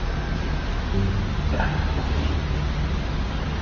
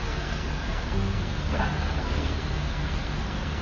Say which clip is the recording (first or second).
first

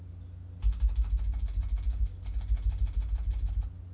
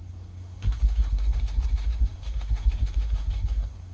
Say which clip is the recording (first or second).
first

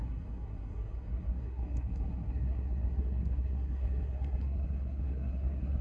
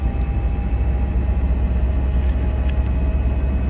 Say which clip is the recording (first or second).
second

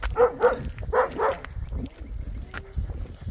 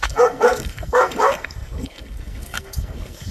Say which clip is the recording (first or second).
first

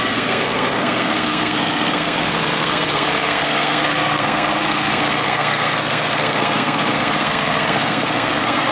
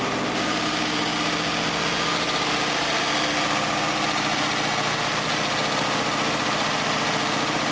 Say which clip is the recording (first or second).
second